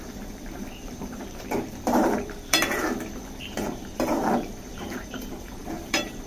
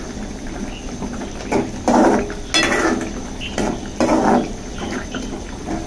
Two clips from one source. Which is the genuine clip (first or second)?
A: second